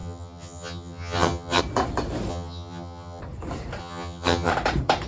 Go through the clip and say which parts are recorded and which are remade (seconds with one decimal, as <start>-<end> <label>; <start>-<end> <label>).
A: 0.0-1.6 remade; 1.6-2.3 recorded; 2.3-3.2 remade; 3.2-3.8 recorded; 3.8-4.5 remade; 4.5-5.1 recorded